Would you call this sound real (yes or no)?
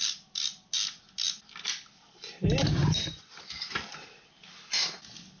yes